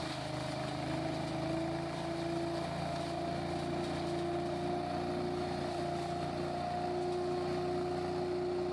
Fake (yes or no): no